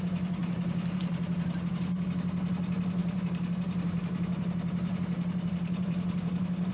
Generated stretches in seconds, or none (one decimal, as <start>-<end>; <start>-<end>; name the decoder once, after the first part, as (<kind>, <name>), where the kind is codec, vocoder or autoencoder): 0.4-1.6 (vocoder, BigVGAN v2); 3.0-6.7